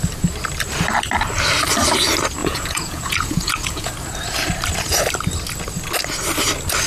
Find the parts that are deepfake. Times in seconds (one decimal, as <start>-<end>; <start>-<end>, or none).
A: 2.4-3.9